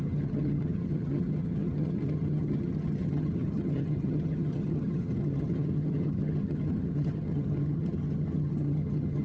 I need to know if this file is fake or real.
fake